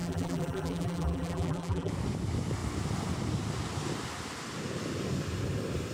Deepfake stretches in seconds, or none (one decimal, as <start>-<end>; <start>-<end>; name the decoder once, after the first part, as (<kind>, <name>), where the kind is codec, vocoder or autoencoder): 0.0-1.9 (vocoder, BigVGAN v2)